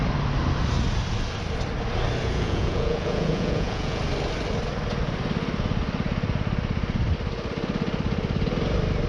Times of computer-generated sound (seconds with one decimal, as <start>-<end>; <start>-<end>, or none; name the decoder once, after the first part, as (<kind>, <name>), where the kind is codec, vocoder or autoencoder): 2.2-4.0 (vocoder, Vocos)